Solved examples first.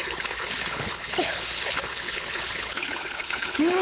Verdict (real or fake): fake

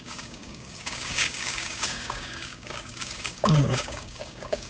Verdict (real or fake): fake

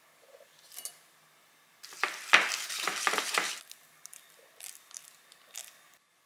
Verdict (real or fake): real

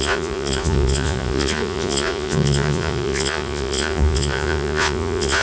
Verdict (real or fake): fake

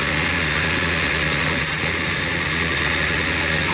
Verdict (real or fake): fake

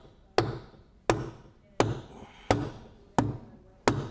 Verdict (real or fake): real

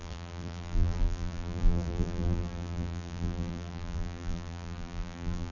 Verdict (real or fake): fake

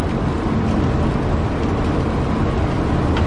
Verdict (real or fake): real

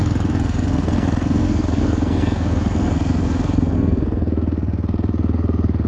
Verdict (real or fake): fake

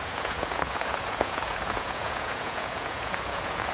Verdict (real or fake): fake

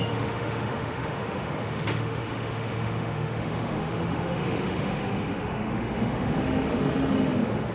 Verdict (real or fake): fake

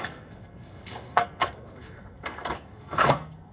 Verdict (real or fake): fake